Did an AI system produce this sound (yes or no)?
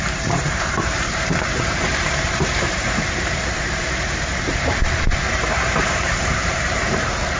yes